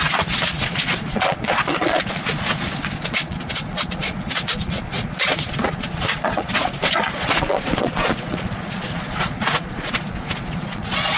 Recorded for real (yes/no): no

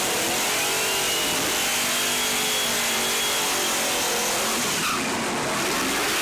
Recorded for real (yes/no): yes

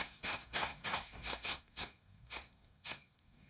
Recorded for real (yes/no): no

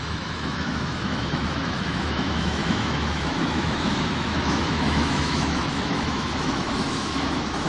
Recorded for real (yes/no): no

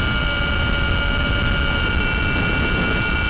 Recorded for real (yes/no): yes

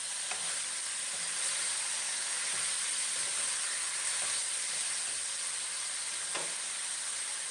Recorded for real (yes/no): yes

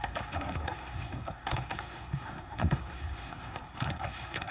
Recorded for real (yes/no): no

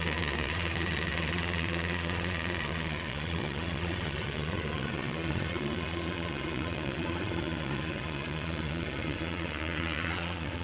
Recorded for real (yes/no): no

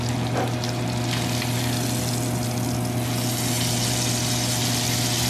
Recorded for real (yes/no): yes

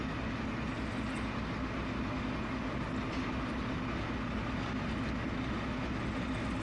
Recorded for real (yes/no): yes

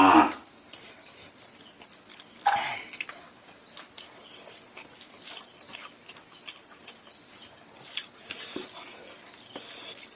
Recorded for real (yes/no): no